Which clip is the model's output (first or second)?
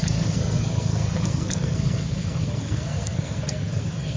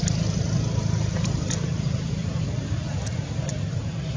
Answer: first